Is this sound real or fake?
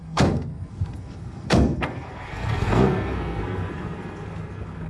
fake